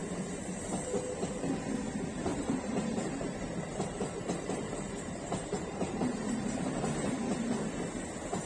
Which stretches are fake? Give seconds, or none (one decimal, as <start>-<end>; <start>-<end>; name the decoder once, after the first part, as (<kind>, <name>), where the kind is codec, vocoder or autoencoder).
0.0-1.5 (vocoder, BigVGAN v2); 2.3-7.1